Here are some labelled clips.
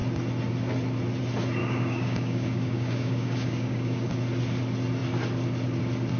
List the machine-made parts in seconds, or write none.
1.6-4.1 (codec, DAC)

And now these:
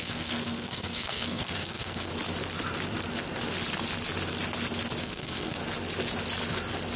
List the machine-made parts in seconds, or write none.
0.0-2.1 (codec, SNAC); 5.0-5.6

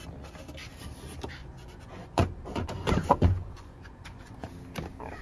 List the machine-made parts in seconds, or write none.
1.4-4.5 (vocoder, Vocos)